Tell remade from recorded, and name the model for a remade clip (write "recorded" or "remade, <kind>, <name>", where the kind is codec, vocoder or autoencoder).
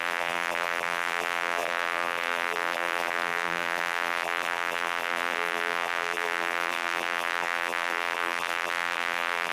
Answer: remade, vocoder, BigVGAN v2